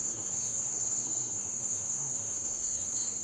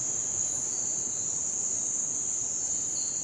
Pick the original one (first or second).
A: second